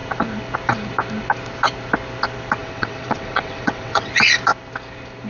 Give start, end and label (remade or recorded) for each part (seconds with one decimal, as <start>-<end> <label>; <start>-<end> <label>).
0.0-2.6 recorded; 2.6-4.1 remade; 4.1-5.3 recorded